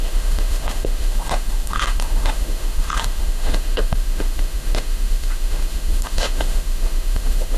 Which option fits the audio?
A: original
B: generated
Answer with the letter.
B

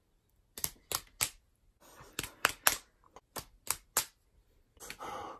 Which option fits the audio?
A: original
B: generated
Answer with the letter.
A